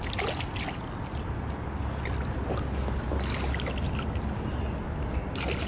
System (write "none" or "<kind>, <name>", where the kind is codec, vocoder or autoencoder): none